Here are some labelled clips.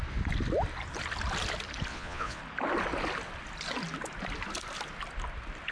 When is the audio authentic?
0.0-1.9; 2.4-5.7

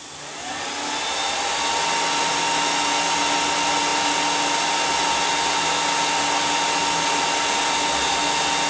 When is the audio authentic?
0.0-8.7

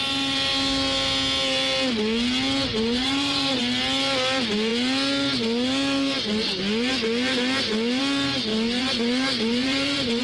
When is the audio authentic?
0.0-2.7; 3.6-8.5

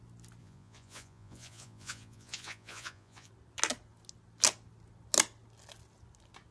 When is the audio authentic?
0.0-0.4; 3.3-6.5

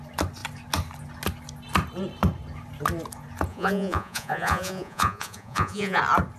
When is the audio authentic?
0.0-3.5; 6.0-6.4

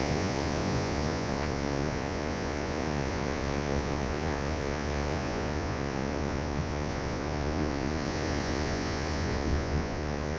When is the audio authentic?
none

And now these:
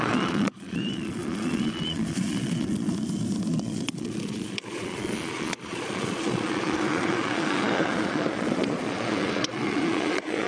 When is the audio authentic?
2.9-3.5

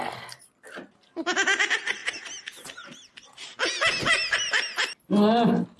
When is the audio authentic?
0.0-5.8